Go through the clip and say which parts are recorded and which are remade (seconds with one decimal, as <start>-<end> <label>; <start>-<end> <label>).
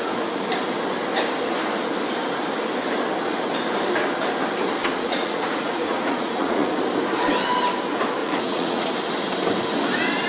0.0-4.8 recorded; 4.8-6.8 remade; 6.8-8.2 recorded; 8.2-8.9 remade; 8.9-10.3 recorded